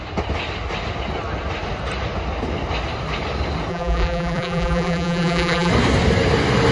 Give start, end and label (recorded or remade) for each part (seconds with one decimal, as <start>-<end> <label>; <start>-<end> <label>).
0.0-3.7 recorded; 3.7-5.7 remade; 5.7-6.7 recorded